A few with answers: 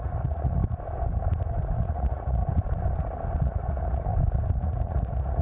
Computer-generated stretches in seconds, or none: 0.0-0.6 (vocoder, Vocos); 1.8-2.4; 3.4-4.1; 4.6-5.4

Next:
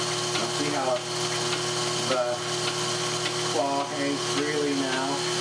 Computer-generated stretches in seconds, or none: none

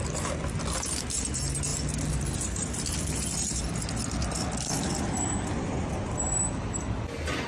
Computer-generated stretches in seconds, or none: none

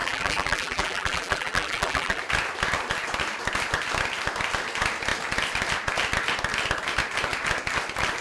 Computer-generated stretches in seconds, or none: 0.0-2.2 (vocoder, BigVGAN v2)

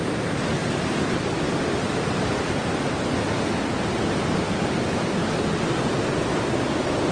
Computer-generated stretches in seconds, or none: none